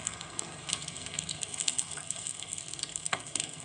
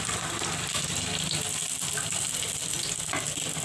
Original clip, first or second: second